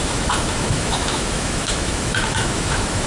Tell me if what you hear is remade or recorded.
remade